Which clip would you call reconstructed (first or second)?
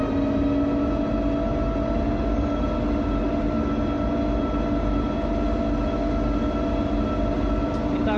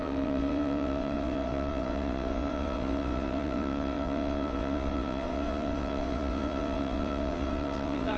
second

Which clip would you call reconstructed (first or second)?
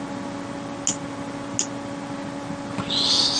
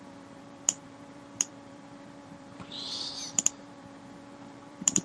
second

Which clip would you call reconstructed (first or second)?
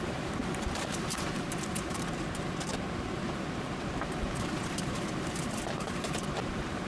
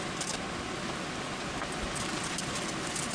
first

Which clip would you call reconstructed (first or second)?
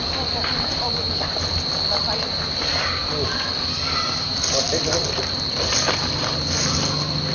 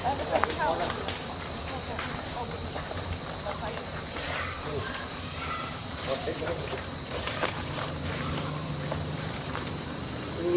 second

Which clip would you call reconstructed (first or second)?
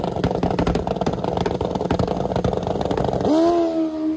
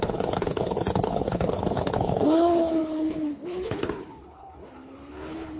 second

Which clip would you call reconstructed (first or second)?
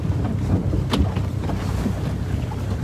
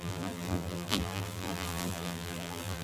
second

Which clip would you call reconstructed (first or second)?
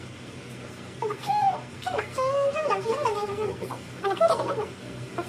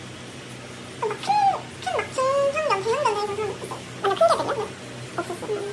first